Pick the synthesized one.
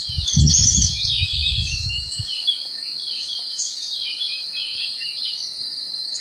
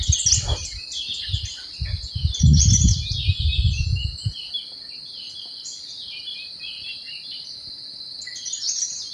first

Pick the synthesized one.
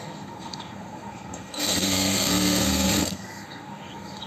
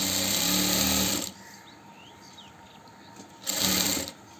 first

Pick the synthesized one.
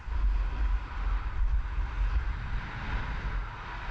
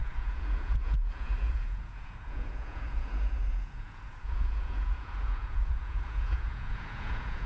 second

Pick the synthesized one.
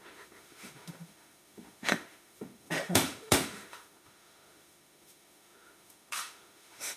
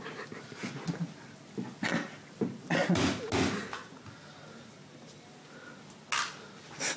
first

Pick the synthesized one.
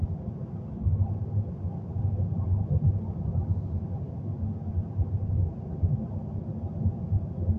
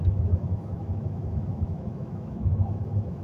second